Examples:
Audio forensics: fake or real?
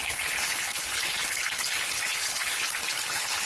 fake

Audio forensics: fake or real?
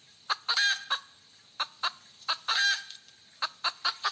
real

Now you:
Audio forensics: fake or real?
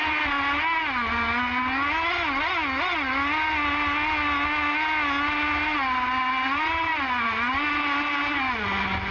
real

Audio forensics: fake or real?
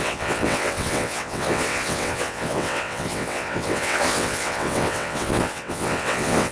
fake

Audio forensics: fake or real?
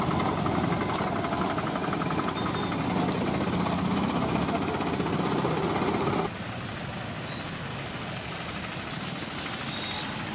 real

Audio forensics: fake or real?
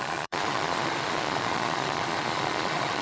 fake